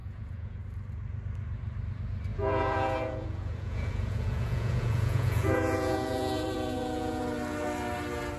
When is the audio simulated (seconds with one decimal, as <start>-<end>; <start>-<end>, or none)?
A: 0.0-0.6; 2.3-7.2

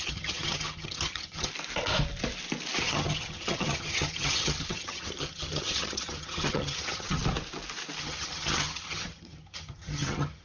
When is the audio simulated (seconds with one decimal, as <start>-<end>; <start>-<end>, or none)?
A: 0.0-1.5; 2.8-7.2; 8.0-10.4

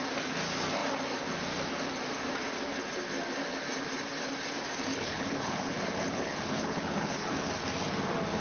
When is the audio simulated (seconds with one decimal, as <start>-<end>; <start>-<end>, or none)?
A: 4.9-7.5

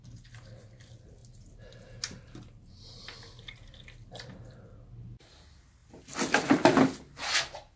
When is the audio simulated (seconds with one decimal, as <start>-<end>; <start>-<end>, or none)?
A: none

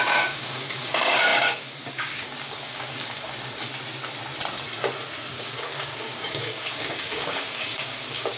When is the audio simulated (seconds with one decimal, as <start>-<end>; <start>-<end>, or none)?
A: 0.0-3.7; 5.4-8.4